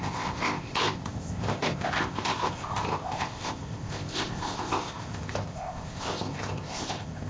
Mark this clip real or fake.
fake